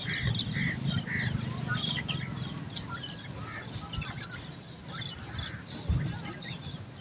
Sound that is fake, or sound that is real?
real